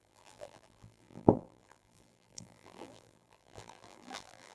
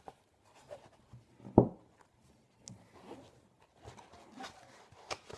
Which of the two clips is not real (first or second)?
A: first